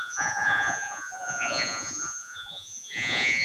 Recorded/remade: remade